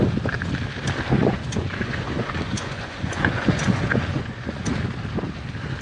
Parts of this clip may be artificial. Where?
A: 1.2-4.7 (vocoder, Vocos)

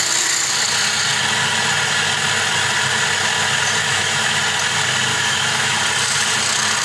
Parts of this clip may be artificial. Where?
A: 3.8-4.4 (autoencoder, DAC-VAE); 5.1-5.8